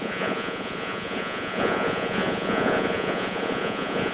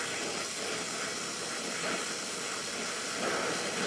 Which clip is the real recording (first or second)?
second